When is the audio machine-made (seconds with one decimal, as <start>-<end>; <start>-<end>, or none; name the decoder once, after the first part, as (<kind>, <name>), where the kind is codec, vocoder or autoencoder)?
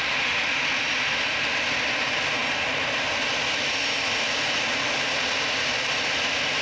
none